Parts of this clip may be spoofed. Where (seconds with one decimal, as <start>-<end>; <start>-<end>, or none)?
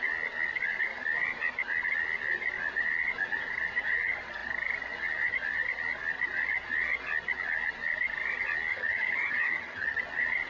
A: 8.7-10.0